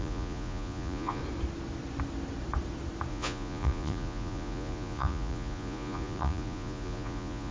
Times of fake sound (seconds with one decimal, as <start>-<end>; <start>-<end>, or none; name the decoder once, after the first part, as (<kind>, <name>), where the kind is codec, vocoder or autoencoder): 0.0-1.2 (vocoder, Vocos); 3.1-7.5